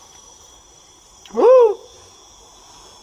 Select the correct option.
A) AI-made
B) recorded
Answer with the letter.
B